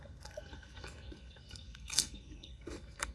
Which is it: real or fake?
fake